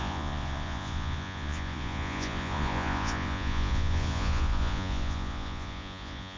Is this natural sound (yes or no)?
no